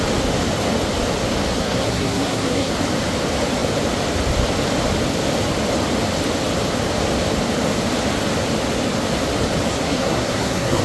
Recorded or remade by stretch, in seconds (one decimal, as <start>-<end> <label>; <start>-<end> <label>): 0.0-1.5 recorded; 1.5-2.7 remade; 2.7-9.7 recorded; 9.7-10.8 remade